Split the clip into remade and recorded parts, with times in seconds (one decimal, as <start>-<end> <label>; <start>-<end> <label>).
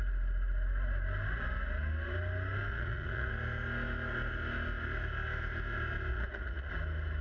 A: 0.0-2.7 recorded; 2.7-3.3 remade; 3.3-6.1 recorded; 6.1-6.7 remade; 6.7-7.2 recorded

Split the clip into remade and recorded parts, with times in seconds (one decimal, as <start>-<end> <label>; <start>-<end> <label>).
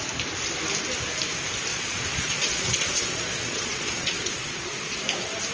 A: 0.0-1.7 recorded; 1.7-5.0 remade; 5.0-5.5 recorded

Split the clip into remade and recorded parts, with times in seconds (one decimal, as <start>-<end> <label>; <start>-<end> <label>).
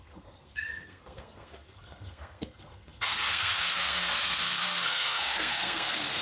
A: 0.0-6.2 remade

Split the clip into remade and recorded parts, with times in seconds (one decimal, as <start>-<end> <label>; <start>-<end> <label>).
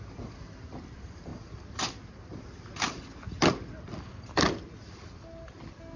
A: 0.0-6.0 recorded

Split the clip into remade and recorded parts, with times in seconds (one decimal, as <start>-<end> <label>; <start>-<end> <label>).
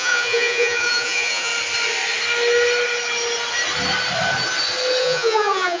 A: 0.0-1.5 remade; 1.5-5.0 recorded; 5.0-5.8 remade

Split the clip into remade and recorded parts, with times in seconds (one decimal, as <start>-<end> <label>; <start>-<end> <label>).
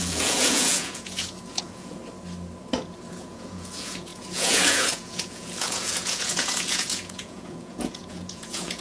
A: 0.0-2.0 remade; 2.0-3.1 recorded; 3.1-8.8 remade